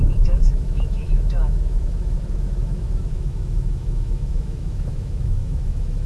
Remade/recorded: remade